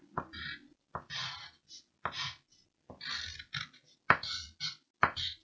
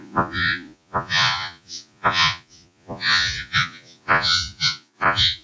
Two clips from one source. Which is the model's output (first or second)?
second